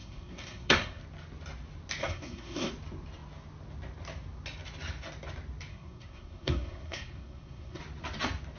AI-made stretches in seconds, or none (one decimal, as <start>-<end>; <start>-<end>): 0.0-1.0; 2.0-2.7; 5.7-7.8